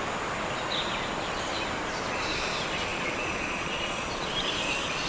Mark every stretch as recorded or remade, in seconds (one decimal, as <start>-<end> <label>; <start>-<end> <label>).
0.0-2.9 recorded; 2.9-4.3 remade; 4.3-5.1 recorded